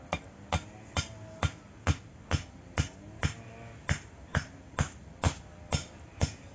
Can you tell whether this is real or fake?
real